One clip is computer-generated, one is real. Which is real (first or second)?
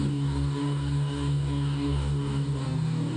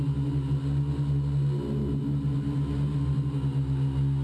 second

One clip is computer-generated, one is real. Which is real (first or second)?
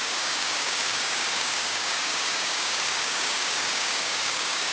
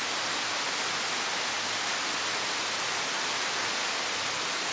second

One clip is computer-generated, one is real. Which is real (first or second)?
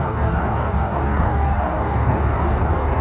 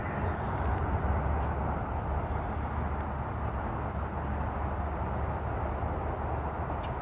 second